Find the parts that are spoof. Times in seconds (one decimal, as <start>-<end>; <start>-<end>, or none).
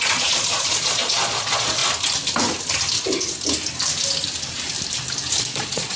0.0-1.8; 5.4-6.0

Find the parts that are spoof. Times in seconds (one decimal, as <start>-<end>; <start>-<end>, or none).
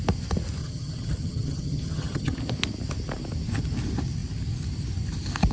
0.6-2.4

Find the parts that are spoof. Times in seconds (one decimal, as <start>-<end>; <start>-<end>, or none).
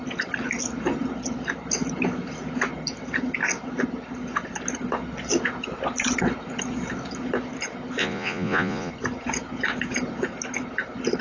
8.0-8.9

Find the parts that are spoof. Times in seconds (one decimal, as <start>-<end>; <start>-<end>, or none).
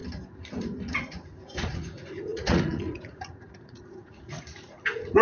0.6-5.2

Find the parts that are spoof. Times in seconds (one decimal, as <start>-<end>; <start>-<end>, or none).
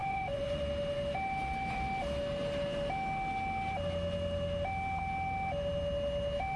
0.0-0.6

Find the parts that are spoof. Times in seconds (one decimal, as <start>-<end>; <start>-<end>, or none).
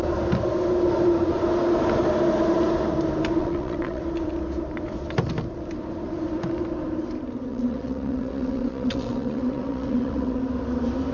3.4-4.0; 7.5-10.4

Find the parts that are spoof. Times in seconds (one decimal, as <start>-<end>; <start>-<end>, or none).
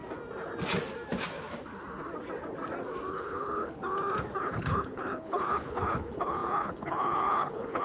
3.1-3.8; 4.4-7.8